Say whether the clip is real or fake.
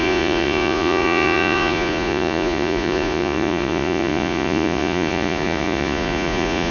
fake